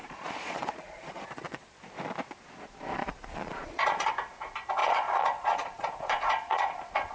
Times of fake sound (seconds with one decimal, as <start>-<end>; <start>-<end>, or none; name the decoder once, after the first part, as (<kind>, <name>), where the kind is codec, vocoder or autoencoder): 0.0-1.8 (vocoder, Vocos); 3.0-4.1; 4.8-7.1

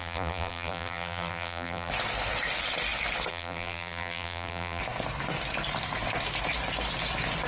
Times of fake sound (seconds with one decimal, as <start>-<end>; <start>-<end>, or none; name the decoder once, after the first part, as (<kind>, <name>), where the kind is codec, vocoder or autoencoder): 0.0-1.9 (vocoder, BigVGAN v2); 3.3-4.8

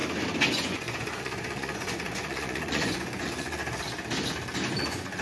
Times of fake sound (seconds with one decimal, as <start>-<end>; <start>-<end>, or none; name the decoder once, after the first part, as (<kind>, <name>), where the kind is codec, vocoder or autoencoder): 0.5-3.6 (vocoder, Vocos); 4.7-5.2